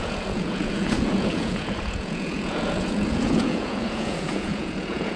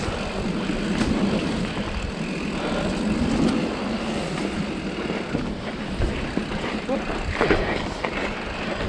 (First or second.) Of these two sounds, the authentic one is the second